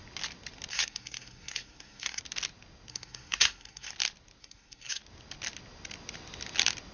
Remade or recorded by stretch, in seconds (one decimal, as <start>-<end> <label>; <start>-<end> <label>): 0.0-0.7 recorded; 0.7-2.2 remade; 2.2-2.9 recorded; 2.9-3.9 remade; 3.9-4.4 recorded; 4.4-5.0 remade; 5.0-6.9 recorded